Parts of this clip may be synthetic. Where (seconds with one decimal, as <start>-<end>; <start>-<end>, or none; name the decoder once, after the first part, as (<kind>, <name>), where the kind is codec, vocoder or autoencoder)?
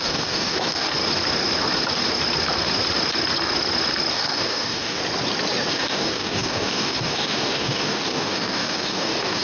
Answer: 0.0-0.9 (codec, DAC); 4.1-5.0; 5.7-9.4